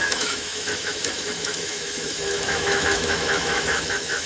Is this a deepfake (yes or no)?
yes